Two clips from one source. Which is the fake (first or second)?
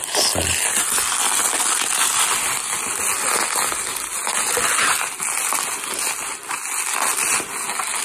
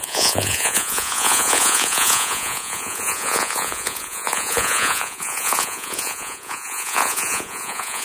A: second